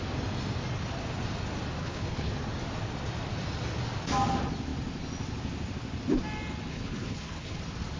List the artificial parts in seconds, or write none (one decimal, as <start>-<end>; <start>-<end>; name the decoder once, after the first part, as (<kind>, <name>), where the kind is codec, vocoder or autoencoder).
1.8-2.3 (codec, HILCodec); 6.7-7.6